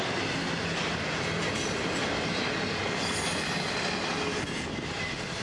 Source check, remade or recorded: recorded